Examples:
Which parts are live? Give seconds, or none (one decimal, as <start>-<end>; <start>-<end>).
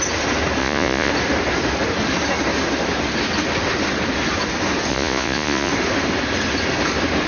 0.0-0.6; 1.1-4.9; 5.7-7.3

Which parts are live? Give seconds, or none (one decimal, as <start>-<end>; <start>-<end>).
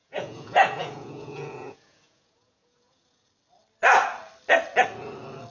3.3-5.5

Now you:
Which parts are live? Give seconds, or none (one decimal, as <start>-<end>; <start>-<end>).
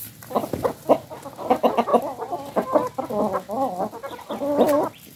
0.0-5.2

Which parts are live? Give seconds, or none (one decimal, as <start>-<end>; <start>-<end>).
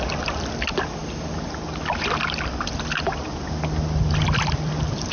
0.0-5.1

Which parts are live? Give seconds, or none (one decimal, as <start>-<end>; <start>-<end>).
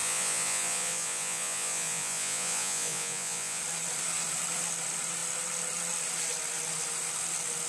3.6-7.7